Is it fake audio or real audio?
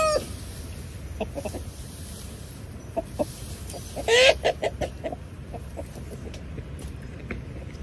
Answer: real